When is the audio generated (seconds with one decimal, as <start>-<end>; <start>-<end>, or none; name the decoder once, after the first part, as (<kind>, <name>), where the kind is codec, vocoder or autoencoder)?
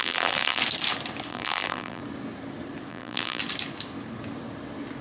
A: 0.0-0.6 (vocoder, BigVGAN v2); 1.3-2.0; 2.9-3.4